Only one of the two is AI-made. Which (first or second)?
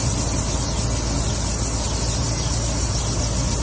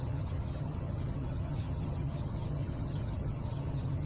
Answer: second